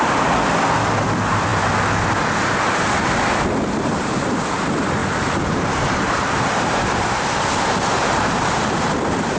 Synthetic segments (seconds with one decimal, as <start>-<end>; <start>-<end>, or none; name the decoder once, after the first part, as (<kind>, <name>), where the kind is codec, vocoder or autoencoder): 5.0-8.8 (vocoder, BigVGAN v2)